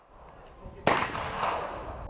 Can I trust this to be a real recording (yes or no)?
yes